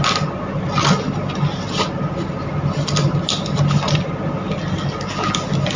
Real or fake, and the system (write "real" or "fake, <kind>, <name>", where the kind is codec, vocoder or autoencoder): real